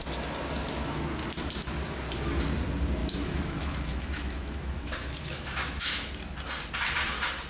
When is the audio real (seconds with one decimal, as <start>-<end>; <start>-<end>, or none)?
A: 0.0-3.0; 6.1-7.5

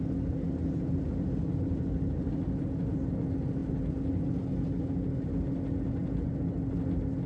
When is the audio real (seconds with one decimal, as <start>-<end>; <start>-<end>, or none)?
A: 0.0-7.3

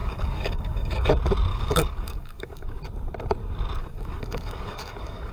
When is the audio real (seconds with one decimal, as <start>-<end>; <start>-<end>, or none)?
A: 1.1-1.5; 2.8-3.8

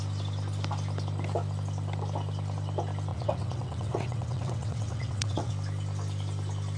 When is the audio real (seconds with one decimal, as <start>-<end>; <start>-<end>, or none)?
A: 0.0-3.1; 5.5-6.8

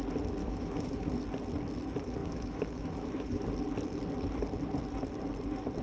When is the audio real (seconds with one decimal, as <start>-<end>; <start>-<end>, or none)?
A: 0.0-0.4; 1.1-2.2; 3.5-5.8

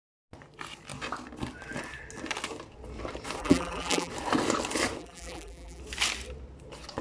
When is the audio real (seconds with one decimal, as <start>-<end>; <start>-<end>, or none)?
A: 0.0-3.4; 4.1-5.0; 5.8-7.0